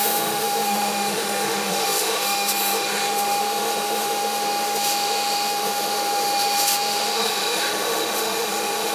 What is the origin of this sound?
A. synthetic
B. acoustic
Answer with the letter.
A